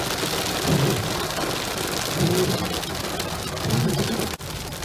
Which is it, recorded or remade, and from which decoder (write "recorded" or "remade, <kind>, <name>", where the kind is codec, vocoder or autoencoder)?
recorded